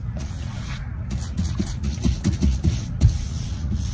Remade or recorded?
remade